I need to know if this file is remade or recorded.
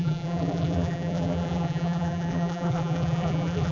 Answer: remade